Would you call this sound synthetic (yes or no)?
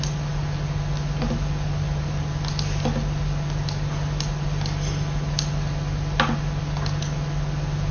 no